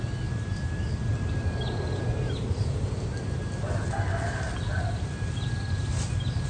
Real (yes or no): yes